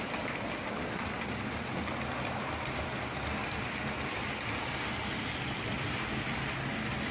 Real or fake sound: real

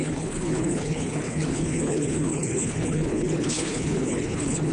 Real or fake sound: fake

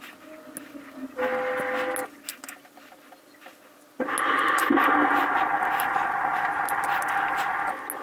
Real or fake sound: real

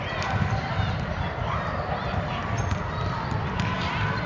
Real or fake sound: real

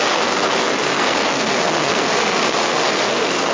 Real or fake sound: fake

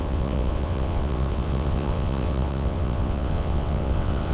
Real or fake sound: fake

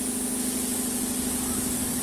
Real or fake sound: real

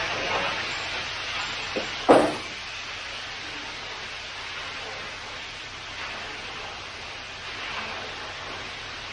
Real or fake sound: real